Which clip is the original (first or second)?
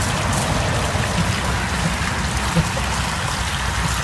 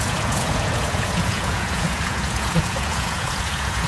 first